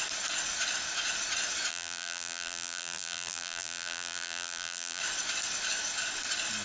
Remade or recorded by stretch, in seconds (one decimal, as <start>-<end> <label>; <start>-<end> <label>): 0.0-1.7 recorded; 1.7-5.0 remade; 5.0-6.6 recorded